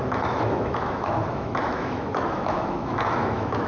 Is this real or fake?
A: fake